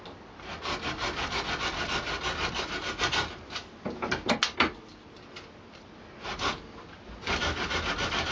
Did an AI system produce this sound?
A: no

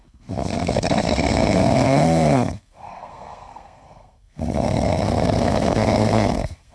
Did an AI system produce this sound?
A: yes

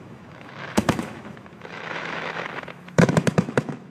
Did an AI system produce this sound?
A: yes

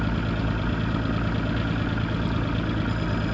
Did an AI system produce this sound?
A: no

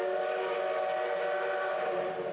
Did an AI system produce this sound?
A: no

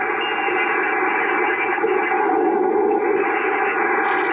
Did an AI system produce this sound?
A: no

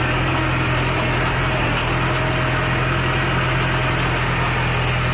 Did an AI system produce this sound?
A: no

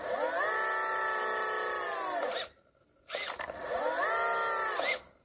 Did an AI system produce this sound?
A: no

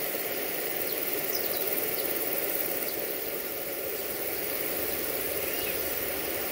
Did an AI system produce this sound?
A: no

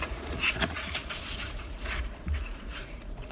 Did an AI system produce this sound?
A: yes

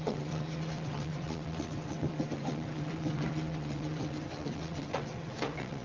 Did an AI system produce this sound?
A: yes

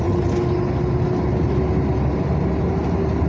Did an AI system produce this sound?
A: no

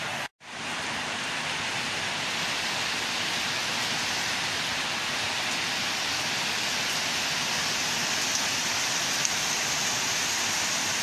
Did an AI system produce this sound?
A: no